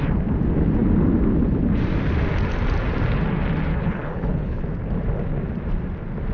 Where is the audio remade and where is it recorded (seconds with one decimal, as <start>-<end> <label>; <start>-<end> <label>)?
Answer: 0.0-3.7 recorded; 3.7-4.6 remade; 4.6-6.3 recorded

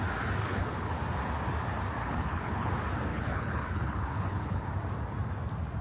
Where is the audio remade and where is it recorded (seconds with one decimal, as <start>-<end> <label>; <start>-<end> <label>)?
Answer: 0.0-0.4 recorded; 0.4-1.0 remade; 1.0-2.0 recorded; 2.0-2.7 remade; 2.7-3.1 recorded; 3.1-4.7 remade; 4.7-5.8 recorded

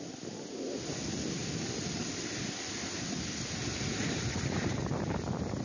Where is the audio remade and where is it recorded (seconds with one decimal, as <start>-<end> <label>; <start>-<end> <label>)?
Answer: 0.0-5.6 recorded